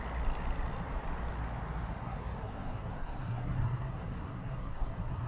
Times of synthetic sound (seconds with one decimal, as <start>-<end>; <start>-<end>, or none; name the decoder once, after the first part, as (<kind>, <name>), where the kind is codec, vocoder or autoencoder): 2.0-5.3 (codec, SNAC)